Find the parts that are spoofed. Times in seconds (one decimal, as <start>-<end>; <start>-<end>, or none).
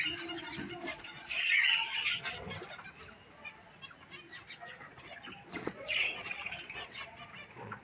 0.5-2.2; 4.7-7.8